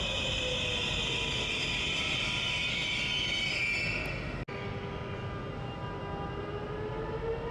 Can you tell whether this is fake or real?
real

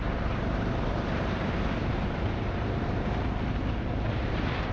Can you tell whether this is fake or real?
fake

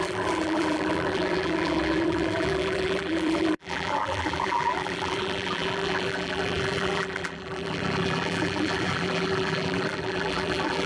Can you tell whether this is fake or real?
fake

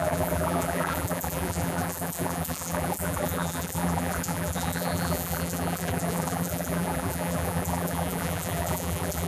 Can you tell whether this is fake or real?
fake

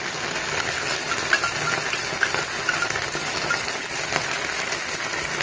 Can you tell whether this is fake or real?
real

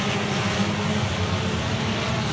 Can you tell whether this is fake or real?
fake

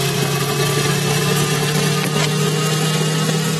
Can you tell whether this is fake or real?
real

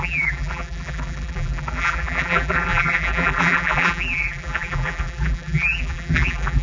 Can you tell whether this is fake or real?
fake